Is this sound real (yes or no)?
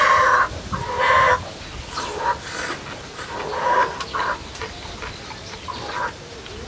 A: yes